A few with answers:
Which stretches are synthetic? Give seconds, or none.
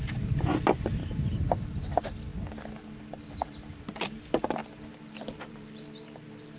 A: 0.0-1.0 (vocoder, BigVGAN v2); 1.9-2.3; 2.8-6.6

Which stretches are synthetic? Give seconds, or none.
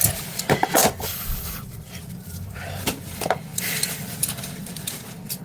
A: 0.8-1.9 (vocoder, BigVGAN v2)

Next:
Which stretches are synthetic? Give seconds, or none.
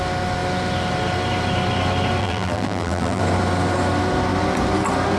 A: 2.2-3.2 (vocoder, BigVGAN v2)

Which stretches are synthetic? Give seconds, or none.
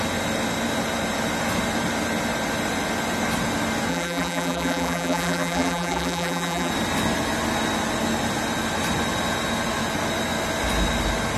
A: 3.9-6.7 (vocoder, BigVGAN v2)